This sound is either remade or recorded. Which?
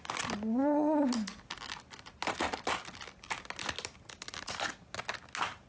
recorded